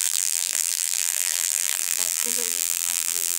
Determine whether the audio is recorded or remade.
remade